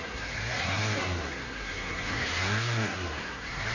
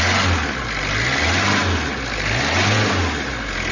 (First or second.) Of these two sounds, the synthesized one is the first